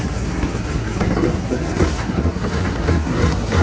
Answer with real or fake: fake